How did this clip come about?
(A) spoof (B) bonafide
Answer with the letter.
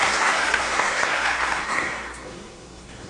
A